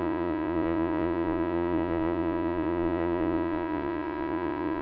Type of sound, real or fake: fake